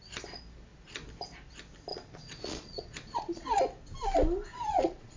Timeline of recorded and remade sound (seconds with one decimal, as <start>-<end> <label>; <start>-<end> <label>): 0.0-1.9 recorded; 1.9-3.6 remade; 3.6-4.5 recorded; 4.5-5.2 remade